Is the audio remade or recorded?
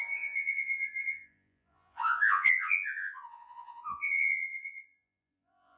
remade